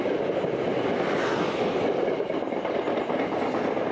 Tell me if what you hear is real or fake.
real